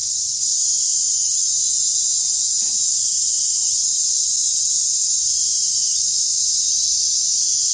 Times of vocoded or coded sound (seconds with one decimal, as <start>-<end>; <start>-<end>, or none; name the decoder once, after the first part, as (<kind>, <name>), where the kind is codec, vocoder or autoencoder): 3.9-6.6 (vocoder, BigVGAN v2)